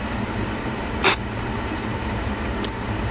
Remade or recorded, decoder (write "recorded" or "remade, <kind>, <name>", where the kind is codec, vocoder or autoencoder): remade, vocoder, BigVGAN v2